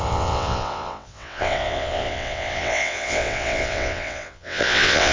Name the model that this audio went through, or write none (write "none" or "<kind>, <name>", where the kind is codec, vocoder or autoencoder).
vocoder, WaveNeXt